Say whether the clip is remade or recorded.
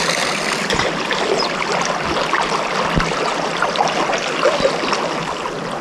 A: recorded